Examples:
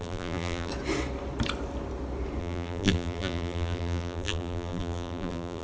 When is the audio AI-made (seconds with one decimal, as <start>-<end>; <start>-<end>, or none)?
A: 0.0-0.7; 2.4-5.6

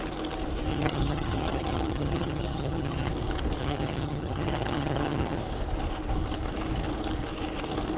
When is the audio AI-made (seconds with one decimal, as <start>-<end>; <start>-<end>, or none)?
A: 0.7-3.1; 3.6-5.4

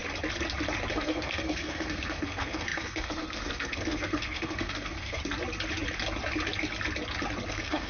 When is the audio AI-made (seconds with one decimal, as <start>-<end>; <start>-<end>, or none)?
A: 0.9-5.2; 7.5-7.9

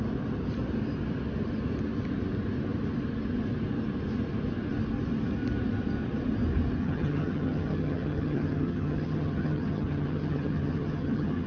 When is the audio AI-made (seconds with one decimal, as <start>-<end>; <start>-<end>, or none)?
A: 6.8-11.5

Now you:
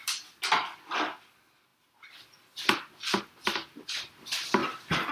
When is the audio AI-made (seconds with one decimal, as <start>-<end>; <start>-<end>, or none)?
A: 0.0-0.5; 4.6-5.1

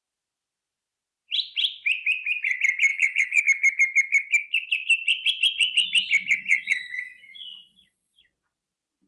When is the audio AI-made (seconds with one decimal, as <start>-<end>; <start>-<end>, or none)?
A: 2.9-3.4; 6.5-8.2

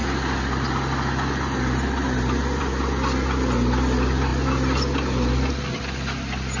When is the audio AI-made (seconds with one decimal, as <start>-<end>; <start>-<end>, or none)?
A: none

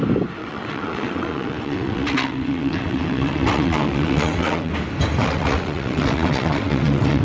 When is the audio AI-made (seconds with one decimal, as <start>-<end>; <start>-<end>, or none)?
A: 0.4-4.7; 5.2-7.2